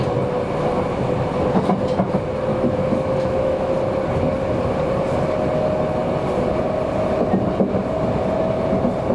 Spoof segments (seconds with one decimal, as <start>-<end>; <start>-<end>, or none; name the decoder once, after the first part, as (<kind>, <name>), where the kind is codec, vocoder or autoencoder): 2.5-3.7 (autoencoder, DAC-VAE)